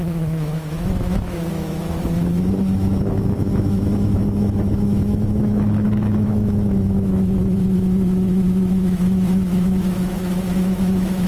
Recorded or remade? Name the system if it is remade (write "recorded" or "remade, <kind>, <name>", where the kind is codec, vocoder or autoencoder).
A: remade, autoencoder, DAC-VAE